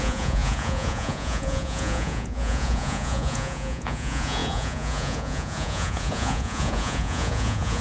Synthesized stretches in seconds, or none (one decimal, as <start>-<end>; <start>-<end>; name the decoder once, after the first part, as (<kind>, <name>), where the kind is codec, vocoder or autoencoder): 0.0-7.8 (vocoder, Vocos)